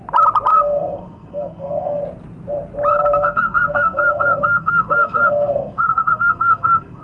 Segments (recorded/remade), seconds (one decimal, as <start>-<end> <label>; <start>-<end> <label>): 0.0-0.5 recorded; 0.5-2.0 remade; 2.0-2.9 recorded; 2.9-7.0 remade